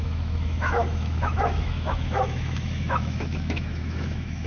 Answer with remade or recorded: remade